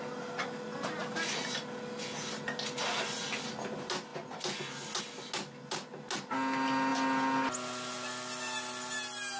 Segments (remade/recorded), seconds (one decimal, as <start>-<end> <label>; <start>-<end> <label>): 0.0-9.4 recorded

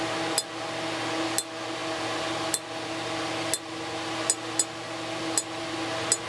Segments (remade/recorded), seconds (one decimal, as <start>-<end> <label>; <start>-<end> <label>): 0.0-6.3 recorded

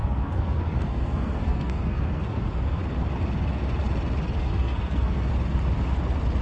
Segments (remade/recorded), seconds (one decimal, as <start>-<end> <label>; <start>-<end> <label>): 0.0-2.8 remade; 2.8-4.4 recorded; 4.4-5.3 remade; 5.3-6.4 recorded

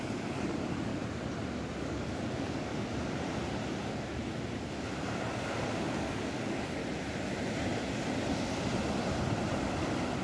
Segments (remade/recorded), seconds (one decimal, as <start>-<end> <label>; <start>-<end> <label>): 0.0-0.9 remade; 0.9-1.8 recorded; 1.8-2.7 remade; 2.7-5.3 recorded; 5.3-6.8 remade; 6.8-10.2 recorded

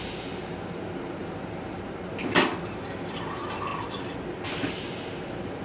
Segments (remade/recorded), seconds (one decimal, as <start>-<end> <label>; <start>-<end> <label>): 0.0-1.2 recorded; 1.2-1.9 remade; 1.9-3.7 recorded; 3.7-4.7 remade; 4.7-5.6 recorded